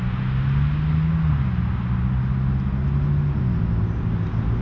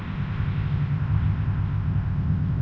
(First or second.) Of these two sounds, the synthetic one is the second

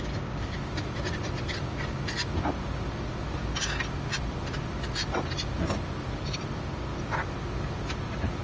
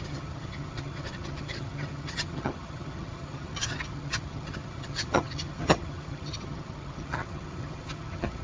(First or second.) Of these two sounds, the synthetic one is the second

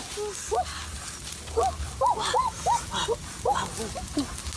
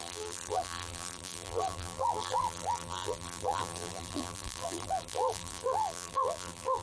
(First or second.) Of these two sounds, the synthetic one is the second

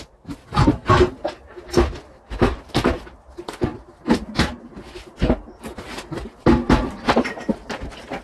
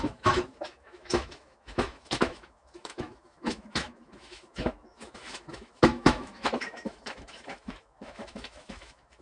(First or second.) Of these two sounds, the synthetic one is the second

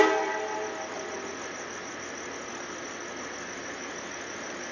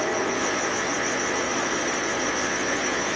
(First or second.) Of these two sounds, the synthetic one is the second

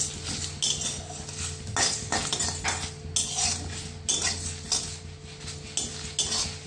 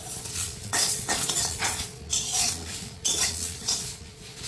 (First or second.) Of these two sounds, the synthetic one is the second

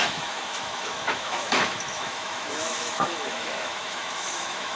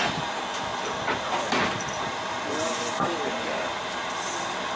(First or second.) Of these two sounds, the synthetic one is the first